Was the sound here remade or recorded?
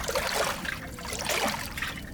recorded